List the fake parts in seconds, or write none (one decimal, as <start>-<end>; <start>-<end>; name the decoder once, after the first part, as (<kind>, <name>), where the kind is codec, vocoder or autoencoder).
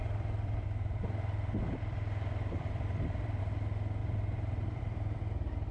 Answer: 0.0-3.4 (vocoder, BigVGAN v2); 4.0-5.2